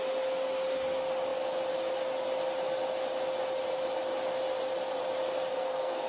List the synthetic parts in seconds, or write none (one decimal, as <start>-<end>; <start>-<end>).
5.5-6.1